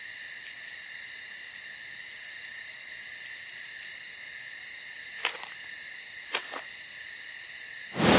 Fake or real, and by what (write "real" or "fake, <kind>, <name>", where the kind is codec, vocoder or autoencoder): real